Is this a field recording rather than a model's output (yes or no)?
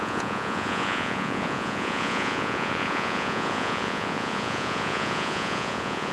no